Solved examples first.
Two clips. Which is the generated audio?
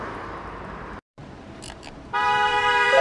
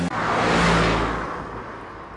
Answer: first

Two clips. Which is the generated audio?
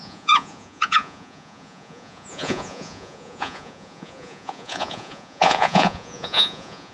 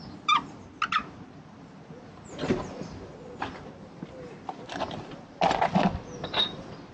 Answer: first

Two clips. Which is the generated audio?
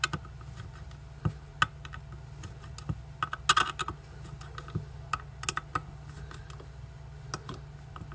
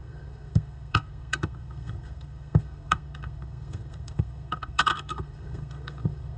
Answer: second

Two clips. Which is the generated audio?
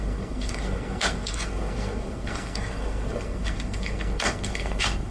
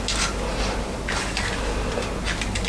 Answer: first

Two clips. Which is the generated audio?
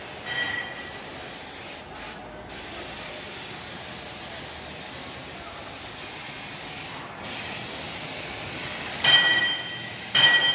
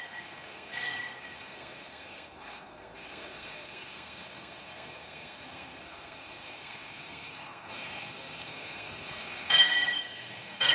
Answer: second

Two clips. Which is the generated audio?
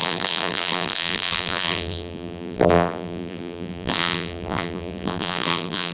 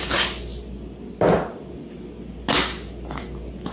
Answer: first